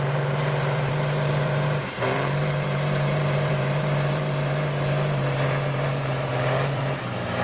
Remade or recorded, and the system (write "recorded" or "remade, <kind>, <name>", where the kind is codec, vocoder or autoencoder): remade, vocoder, BigVGAN v2